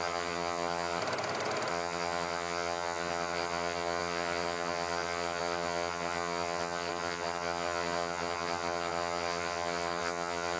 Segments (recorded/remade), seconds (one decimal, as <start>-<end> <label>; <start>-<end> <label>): 0.0-1.0 remade; 1.0-1.7 recorded; 1.7-10.6 remade